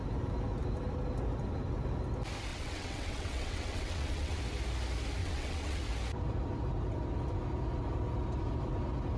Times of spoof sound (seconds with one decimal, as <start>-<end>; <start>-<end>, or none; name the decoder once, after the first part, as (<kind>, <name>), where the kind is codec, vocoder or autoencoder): 2.5-4.4 (vocoder, WaveNeXt); 5.2-5.8